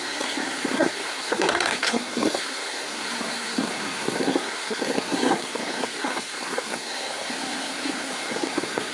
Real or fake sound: fake